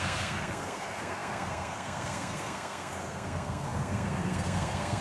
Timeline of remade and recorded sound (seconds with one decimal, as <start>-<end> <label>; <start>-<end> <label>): 0.0-5.0 remade

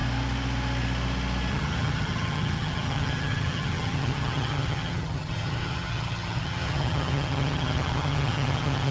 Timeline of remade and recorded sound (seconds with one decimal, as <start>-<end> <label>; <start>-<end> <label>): 0.0-1.5 recorded; 1.5-8.9 remade

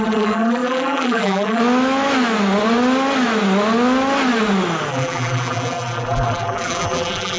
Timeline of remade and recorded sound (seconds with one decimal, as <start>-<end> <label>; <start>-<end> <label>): 0.0-1.6 remade; 1.6-4.9 recorded; 4.9-7.4 remade

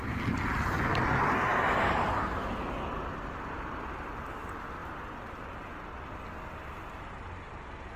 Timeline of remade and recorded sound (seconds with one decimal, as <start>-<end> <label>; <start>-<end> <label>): 0.0-8.0 recorded

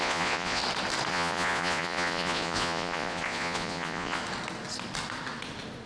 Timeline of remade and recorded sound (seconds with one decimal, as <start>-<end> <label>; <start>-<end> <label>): 0.0-0.6 remade; 0.6-1.1 recorded; 1.1-4.2 remade; 4.2-5.9 recorded

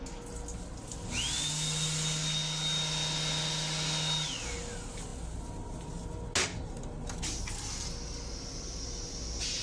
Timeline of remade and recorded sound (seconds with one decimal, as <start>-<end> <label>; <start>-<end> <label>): 0.0-9.6 recorded